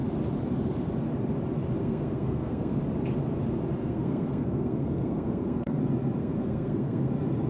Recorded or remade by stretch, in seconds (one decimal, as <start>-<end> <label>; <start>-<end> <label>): 0.0-1.8 recorded; 1.8-2.8 remade; 2.8-3.8 recorded; 3.8-5.8 remade; 5.8-6.2 recorded; 6.2-7.1 remade; 7.1-7.5 recorded